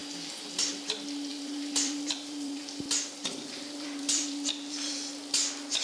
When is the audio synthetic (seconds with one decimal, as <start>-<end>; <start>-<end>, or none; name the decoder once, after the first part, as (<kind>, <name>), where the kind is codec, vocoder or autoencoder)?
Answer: 1.3-2.6 (vocoder, BigVGAN v2); 3.2-5.0